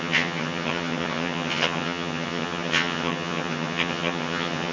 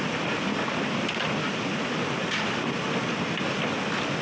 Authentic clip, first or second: second